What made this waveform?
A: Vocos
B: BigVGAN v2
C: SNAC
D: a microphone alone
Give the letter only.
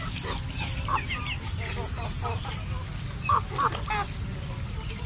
D